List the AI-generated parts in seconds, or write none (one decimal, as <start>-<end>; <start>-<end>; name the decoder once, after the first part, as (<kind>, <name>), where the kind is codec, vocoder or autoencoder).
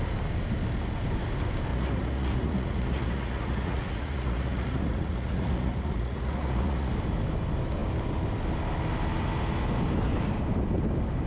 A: 1.7-6.9 (vocoder, Vocos)